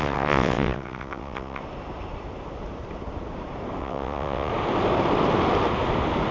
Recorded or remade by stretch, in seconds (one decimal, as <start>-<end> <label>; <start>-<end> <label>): 0.0-1.6 remade; 1.6-3.8 recorded; 3.8-4.5 remade; 4.5-6.3 recorded

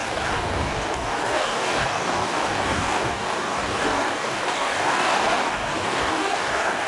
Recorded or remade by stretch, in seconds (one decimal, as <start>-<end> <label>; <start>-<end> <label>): 0.0-6.9 remade

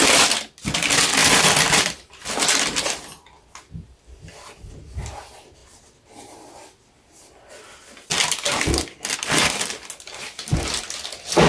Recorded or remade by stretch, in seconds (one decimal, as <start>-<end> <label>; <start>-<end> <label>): 0.0-11.5 recorded

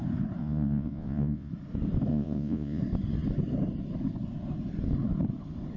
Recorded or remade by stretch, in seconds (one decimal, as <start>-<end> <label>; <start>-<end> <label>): 0.0-0.4 recorded; 0.4-1.5 remade; 1.5-2.1 recorded; 2.1-2.8 remade; 2.8-5.8 recorded

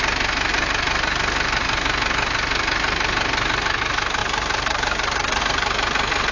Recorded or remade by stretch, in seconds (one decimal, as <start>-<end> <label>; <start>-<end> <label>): 0.0-4.2 recorded; 4.2-5.4 remade; 5.4-6.3 recorded

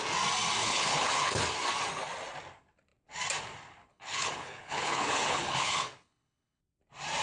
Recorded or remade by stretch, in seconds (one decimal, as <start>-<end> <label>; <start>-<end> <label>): 0.0-0.6 recorded; 0.6-1.4 remade; 1.4-3.9 recorded; 3.9-6.6 remade; 6.6-7.2 recorded

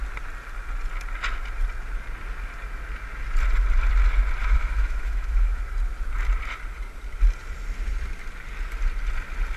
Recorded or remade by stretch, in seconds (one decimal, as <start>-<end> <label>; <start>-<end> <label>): 0.0-4.4 recorded; 4.4-5.6 remade; 5.6-9.6 recorded